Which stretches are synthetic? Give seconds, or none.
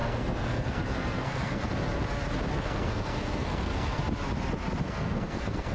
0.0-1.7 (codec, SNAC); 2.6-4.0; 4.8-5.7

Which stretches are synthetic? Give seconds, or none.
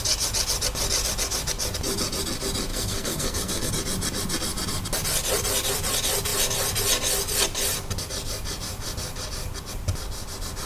2.7-3.7 (codec, SNAC)